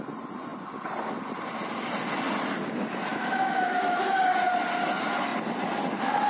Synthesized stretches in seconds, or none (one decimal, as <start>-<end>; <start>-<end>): 3.1-4.0